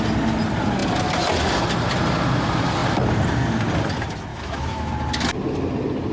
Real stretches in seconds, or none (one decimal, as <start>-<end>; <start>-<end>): 0.0-4.3; 4.9-6.1